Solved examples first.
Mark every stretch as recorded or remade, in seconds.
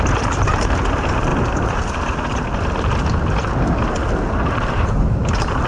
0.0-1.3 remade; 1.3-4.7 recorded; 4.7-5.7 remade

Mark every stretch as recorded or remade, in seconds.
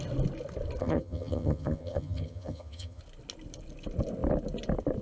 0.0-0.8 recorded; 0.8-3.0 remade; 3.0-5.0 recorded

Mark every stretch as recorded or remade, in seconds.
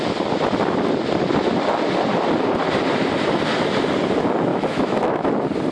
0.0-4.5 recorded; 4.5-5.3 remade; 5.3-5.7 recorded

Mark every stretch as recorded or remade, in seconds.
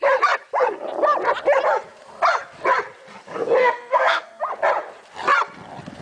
0.0-3.6 recorded; 3.6-4.4 remade; 4.4-6.0 recorded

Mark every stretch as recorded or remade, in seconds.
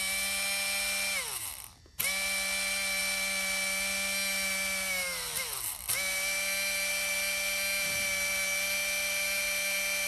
0.0-10.1 recorded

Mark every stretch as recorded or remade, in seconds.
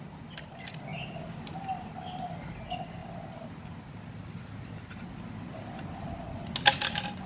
0.0-0.9 recorded; 0.9-1.5 remade; 1.5-7.3 recorded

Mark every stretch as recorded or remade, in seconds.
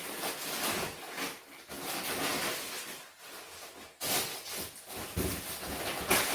0.0-6.3 recorded